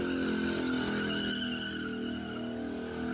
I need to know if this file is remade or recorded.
recorded